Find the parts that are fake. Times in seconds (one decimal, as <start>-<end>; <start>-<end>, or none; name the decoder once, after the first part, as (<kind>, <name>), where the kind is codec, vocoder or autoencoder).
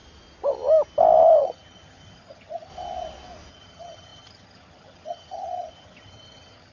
1.4-2.7 (vocoder, HiFi-GAN); 3.5-6.7